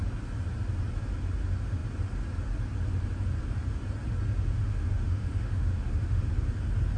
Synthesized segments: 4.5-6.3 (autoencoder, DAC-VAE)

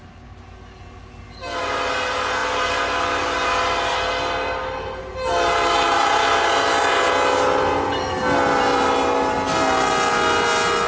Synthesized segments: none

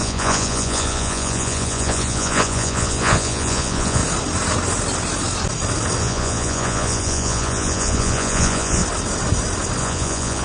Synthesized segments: 0.0-4.0 (vocoder, Vocos); 6.0-8.8; 9.8-10.4

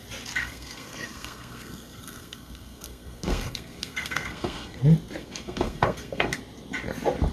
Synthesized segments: 0.4-4.8 (codec, SNAC); 5.2-6.4

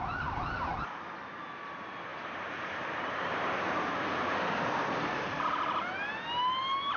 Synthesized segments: 2.1-5.4 (vocoder, BigVGAN v2)